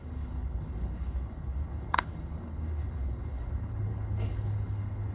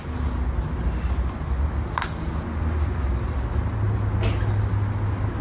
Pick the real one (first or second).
second